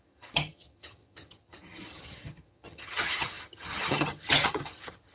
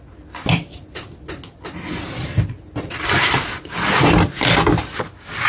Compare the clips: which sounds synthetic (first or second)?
first